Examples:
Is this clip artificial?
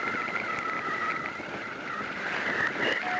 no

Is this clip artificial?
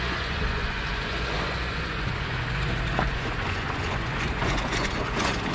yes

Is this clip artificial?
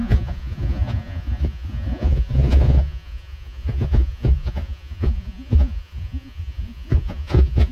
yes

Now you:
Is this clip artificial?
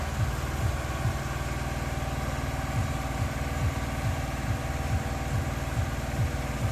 no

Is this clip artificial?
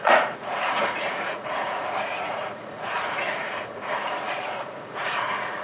yes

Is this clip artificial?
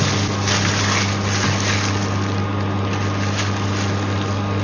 no